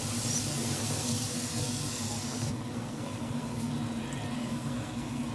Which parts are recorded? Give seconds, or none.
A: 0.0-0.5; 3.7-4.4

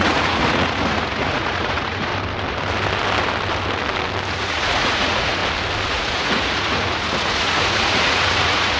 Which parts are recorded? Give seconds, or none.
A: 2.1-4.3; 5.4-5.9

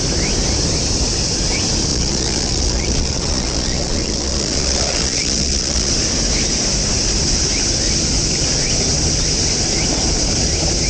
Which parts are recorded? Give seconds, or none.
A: 0.0-1.9; 5.9-10.9